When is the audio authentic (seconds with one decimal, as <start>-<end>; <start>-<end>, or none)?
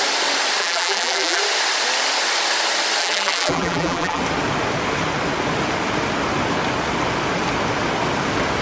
0.0-0.6; 1.4-3.0; 4.2-8.6